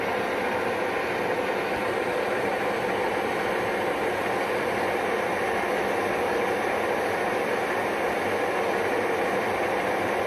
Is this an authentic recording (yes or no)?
yes